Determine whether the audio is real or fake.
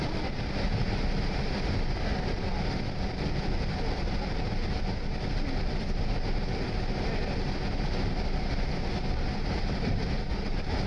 real